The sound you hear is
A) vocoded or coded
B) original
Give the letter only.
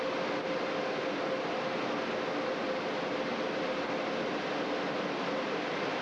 B